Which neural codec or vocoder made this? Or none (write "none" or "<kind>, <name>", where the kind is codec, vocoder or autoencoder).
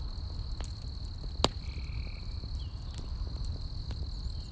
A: none